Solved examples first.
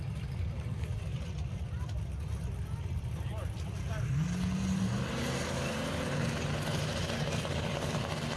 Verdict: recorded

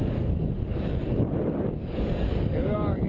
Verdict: remade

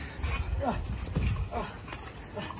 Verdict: recorded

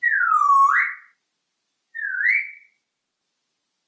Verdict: recorded